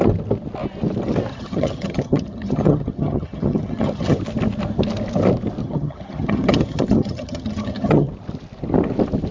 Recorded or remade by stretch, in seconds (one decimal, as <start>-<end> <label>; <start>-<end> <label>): 0.0-1.3 recorded; 1.3-4.2 remade; 4.2-5.6 recorded; 5.6-8.1 remade; 8.1-9.3 recorded